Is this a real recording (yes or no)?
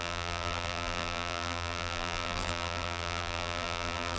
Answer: no